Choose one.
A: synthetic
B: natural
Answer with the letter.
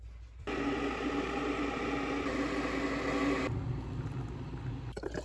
B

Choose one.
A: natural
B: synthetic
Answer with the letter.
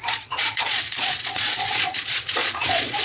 B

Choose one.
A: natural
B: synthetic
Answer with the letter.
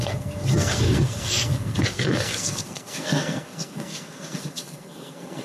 B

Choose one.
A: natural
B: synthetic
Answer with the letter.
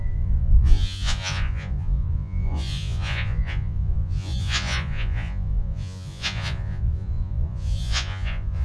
B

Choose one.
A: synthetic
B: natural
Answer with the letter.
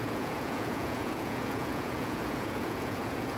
A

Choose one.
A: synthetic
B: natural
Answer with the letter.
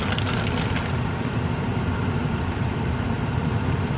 B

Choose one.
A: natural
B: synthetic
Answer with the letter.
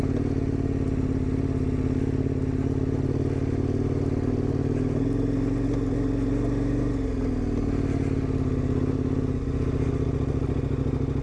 A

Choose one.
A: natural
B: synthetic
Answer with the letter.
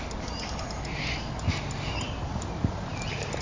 A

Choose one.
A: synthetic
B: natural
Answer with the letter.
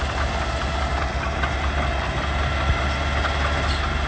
B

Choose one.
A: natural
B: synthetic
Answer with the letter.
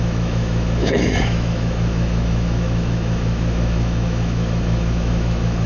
B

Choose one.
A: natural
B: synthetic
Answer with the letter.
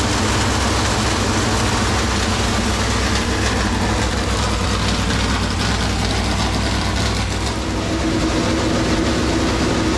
A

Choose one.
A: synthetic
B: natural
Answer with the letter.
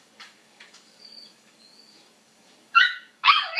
A